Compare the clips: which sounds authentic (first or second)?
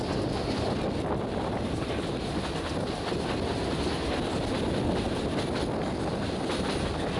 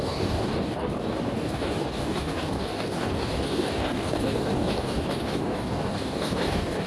first